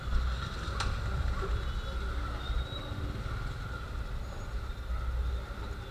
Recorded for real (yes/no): yes